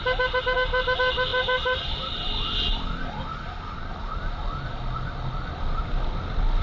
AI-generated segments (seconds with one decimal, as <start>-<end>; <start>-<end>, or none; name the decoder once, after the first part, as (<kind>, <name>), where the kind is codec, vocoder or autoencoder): none